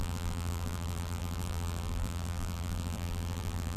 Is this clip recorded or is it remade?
remade